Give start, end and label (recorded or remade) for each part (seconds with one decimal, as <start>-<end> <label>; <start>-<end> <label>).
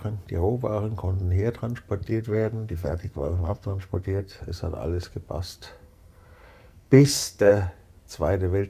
0.0-2.1 recorded; 2.1-4.4 remade; 4.4-5.8 recorded; 5.8-7.5 remade; 7.5-8.7 recorded